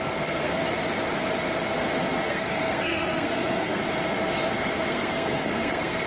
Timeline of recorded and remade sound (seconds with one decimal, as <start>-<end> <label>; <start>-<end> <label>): 0.0-0.6 remade; 0.6-2.3 recorded; 2.3-3.8 remade; 3.8-4.9 recorded; 4.9-6.1 remade